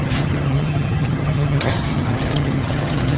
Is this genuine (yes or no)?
no